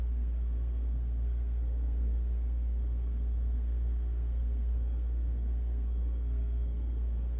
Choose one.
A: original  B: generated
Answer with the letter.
B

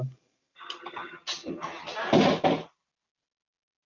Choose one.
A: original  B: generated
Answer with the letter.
A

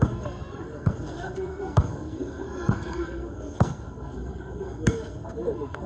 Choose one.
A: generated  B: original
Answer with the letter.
A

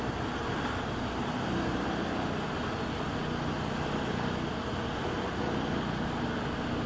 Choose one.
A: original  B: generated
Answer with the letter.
A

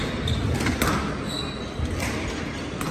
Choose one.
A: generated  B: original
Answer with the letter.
B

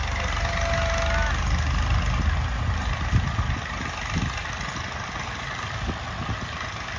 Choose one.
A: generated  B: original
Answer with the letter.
B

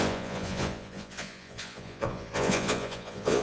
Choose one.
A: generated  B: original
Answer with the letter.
A